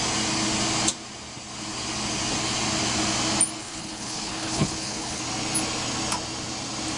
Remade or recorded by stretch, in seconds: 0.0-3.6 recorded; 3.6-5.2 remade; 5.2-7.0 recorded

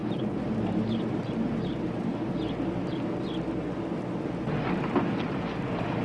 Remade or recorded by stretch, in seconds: 0.0-2.1 remade; 2.1-4.9 recorded; 4.9-6.0 remade

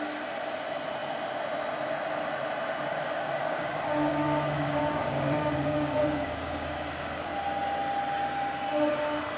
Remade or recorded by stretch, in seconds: 0.0-2.9 recorded; 2.9-7.3 remade; 7.3-9.4 recorded

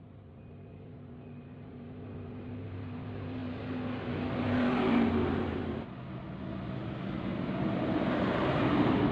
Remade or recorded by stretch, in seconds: 0.0-3.4 remade; 3.4-7.4 recorded; 7.4-9.1 remade